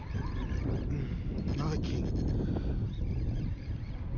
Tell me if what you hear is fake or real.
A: real